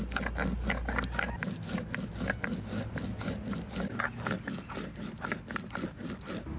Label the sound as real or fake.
real